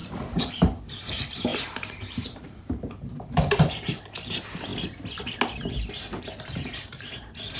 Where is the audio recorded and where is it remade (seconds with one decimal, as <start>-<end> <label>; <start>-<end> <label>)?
0.0-4.7 remade; 4.7-6.2 recorded; 6.2-7.6 remade